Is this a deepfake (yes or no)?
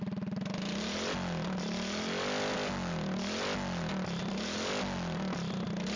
no